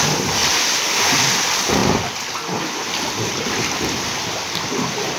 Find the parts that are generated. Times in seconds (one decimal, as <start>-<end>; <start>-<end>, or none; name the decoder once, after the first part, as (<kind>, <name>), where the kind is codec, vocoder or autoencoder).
none